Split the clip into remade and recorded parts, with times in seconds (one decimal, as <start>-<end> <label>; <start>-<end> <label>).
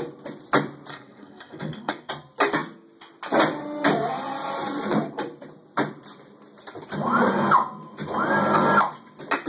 0.0-0.9 recorded; 0.9-2.1 remade; 2.1-9.5 recorded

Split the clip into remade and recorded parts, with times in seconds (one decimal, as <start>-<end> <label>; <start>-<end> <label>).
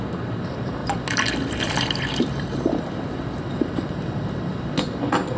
0.0-0.8 remade; 0.8-1.4 recorded; 1.4-4.5 remade; 4.5-5.4 recorded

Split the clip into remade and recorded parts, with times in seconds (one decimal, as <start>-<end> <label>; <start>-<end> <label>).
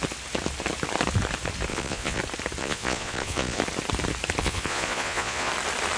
0.0-1.7 recorded; 1.7-2.2 remade; 2.2-2.6 recorded; 2.6-3.6 remade; 3.6-4.4 recorded; 4.4-5.5 remade; 5.5-6.0 recorded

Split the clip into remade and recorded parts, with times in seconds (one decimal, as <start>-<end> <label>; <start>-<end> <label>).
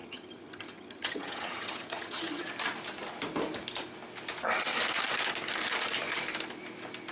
0.0-2.5 remade; 2.5-7.1 recorded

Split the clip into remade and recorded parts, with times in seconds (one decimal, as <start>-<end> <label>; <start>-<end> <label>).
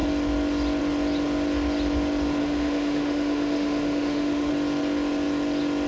0.0-2.4 recorded; 2.4-4.5 remade; 4.5-5.9 recorded